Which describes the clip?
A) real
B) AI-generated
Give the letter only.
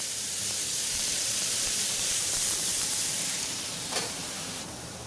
B